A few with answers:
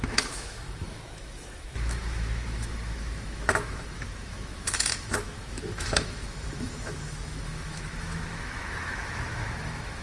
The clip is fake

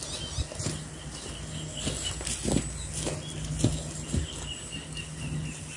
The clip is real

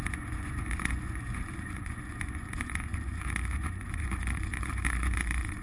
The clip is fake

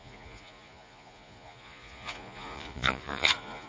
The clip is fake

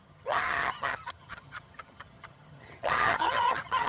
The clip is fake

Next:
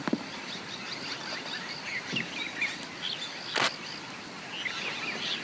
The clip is real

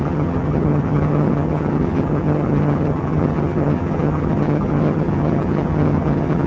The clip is fake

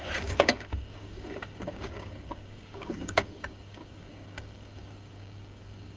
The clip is fake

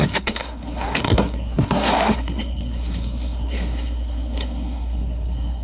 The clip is fake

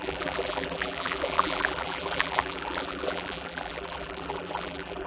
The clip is fake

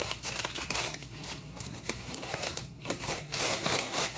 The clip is fake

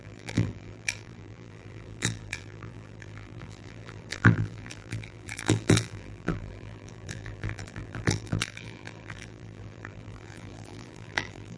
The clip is fake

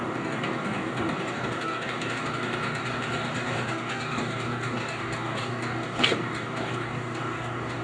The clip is fake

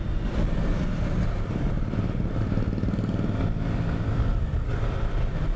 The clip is fake